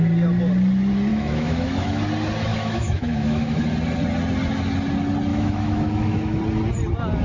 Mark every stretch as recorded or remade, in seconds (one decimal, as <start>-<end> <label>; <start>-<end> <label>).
0.0-1.1 recorded; 1.1-2.0 remade; 2.0-2.5 recorded; 2.5-3.6 remade; 3.6-5.3 recorded; 5.3-6.4 remade; 6.4-7.2 recorded